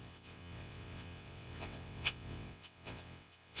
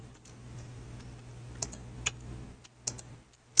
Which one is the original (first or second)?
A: second